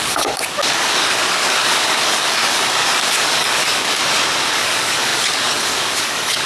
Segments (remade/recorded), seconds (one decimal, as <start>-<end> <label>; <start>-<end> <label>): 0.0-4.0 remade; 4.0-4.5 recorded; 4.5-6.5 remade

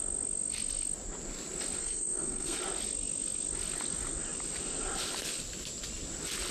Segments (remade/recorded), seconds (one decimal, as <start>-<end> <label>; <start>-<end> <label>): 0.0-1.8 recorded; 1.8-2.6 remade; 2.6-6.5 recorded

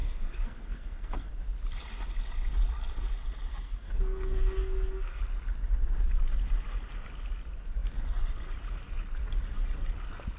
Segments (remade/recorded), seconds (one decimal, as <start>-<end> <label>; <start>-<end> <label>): 0.0-1.3 remade; 1.3-3.5 recorded; 3.5-5.2 remade; 5.2-10.4 recorded

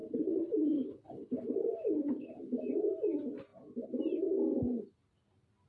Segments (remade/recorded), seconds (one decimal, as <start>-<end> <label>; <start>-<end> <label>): 0.0-2.4 remade; 2.4-5.7 recorded